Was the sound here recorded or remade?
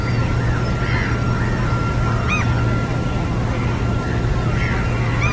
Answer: recorded